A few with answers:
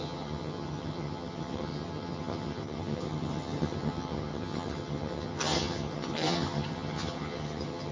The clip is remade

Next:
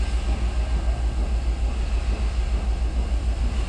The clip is recorded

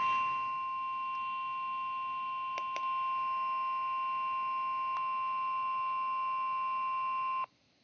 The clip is recorded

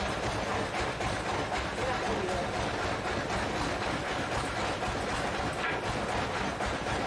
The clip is recorded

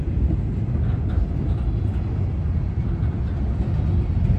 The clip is recorded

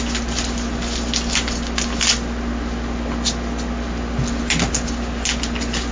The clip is recorded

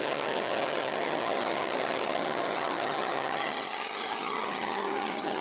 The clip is remade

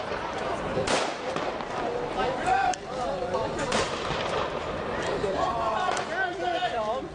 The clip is remade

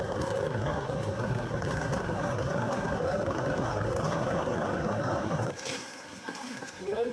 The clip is remade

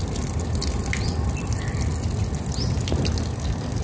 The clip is recorded